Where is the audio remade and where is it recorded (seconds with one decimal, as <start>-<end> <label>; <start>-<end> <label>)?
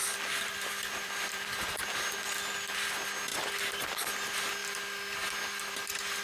0.0-1.8 remade; 1.8-6.2 recorded